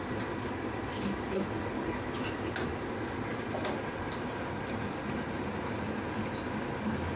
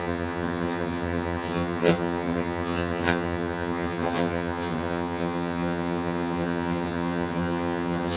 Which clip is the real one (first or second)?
first